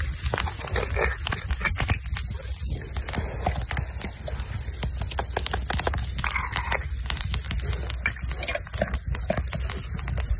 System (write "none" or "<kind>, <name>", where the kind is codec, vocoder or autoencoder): none